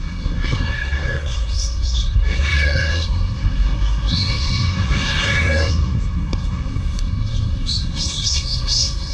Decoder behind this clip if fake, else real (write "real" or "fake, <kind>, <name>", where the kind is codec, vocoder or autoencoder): fake, codec, SNAC